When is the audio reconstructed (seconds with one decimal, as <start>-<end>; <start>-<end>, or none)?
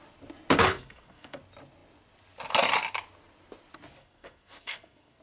0.7-1.4; 4.0-5.2